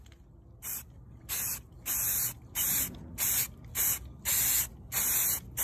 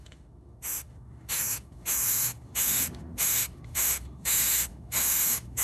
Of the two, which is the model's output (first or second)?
second